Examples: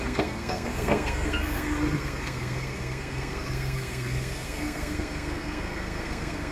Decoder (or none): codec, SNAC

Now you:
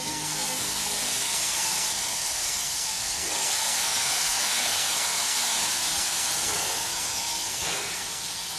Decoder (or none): codec, SNAC